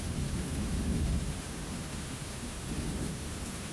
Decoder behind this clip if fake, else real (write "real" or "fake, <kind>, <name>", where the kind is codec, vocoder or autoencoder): fake, autoencoder, DAC-VAE